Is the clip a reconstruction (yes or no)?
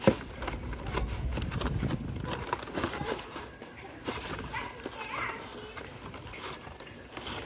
no